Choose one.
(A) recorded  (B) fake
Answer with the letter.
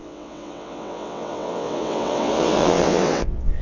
B